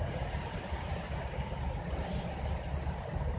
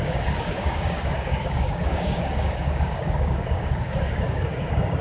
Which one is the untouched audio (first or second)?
first